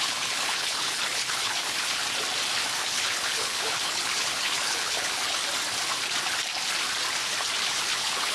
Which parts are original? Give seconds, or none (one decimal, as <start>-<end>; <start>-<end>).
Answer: 2.0-2.8; 5.4-7.6